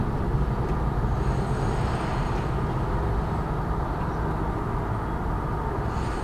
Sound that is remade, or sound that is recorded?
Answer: recorded